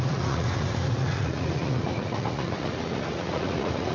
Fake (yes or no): yes